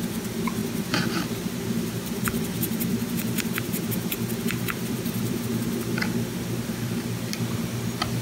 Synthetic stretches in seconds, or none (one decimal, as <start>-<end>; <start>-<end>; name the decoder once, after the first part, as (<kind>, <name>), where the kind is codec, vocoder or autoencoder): 0.6-5.4 (vocoder, BigVGAN v2)